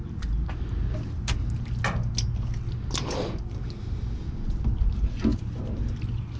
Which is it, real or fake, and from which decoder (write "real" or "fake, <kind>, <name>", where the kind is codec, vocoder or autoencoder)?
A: real